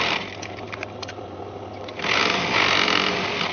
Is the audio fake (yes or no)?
no